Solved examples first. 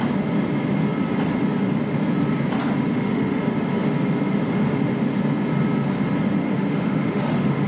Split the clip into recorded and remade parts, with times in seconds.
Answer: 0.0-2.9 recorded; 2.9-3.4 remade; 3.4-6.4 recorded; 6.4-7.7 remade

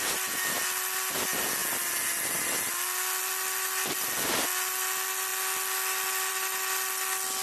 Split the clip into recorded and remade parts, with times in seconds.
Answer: 0.0-7.4 recorded